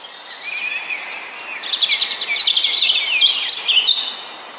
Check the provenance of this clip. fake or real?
real